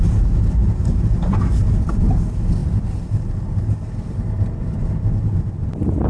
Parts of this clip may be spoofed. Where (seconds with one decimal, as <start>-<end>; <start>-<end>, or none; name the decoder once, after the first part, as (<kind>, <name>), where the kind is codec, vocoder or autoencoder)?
0.6-1.8 (vocoder, BigVGAN v2)